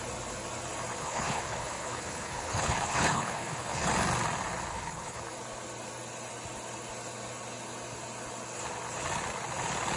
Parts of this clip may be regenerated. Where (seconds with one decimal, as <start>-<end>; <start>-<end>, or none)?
1.0-3.9; 4.7-5.2